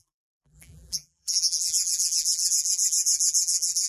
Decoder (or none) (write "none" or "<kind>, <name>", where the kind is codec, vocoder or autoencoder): vocoder, BigVGAN v2